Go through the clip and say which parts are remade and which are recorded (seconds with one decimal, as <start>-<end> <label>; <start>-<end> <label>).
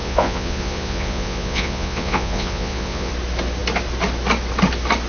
0.0-3.1 remade; 3.1-5.1 recorded